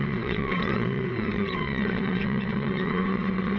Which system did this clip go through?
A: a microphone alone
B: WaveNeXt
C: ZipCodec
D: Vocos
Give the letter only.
B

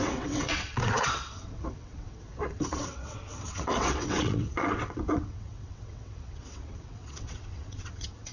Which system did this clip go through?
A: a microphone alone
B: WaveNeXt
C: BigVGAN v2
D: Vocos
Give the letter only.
B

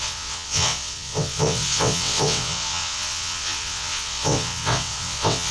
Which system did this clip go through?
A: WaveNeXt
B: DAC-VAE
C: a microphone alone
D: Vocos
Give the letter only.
A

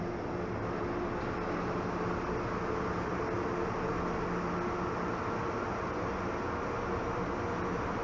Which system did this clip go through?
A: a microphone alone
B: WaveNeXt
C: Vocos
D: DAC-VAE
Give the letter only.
A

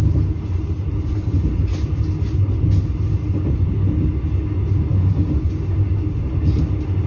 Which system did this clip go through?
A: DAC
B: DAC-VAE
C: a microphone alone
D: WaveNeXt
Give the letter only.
C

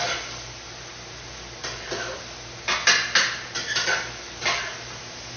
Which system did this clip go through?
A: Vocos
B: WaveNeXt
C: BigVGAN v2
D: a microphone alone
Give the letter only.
D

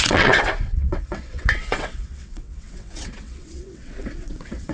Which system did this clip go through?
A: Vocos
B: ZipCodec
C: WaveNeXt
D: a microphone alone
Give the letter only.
C